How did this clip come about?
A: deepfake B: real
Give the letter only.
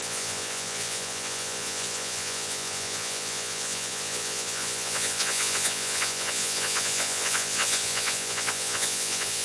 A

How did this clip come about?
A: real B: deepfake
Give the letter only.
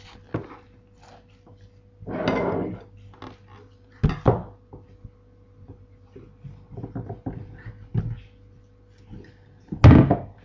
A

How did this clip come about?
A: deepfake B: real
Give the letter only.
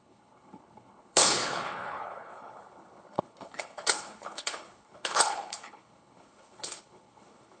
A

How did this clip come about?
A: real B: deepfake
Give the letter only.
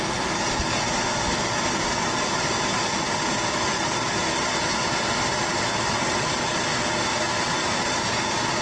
A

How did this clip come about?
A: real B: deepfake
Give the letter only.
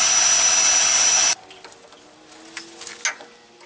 A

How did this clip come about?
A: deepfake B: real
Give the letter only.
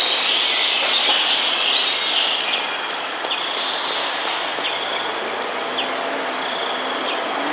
B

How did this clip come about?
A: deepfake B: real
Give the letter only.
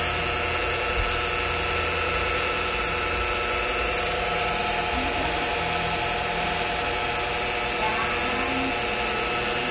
B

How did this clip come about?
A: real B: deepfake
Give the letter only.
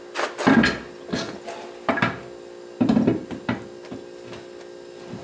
A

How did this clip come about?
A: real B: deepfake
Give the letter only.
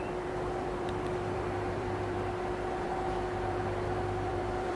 B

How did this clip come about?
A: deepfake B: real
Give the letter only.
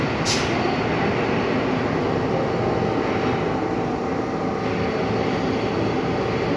B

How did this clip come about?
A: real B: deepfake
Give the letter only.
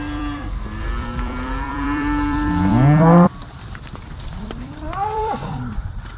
B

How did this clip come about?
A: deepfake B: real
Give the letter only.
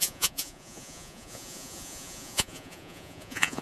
A